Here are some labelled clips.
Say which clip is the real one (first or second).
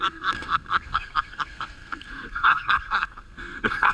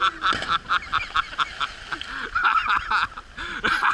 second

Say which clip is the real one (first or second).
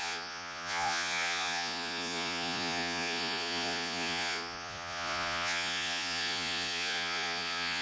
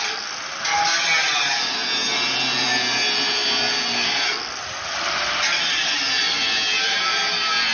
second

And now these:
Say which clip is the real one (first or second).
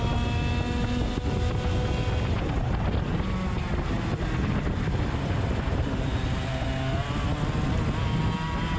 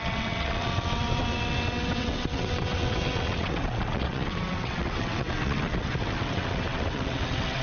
first